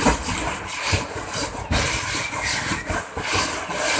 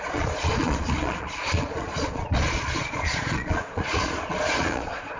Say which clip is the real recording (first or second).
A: first